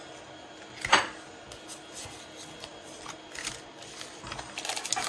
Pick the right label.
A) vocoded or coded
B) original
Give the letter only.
B